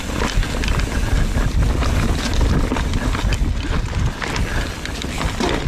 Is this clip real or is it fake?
real